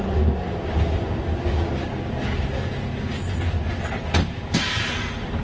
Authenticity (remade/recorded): recorded